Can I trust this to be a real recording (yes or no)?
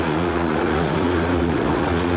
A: no